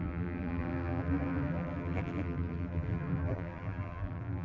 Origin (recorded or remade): remade